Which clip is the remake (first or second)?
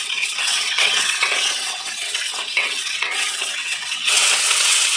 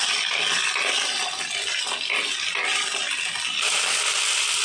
first